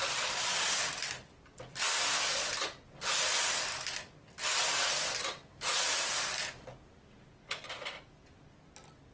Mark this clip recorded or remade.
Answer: recorded